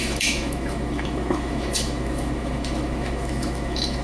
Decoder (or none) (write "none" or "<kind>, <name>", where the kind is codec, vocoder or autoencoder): autoencoder, DAC-VAE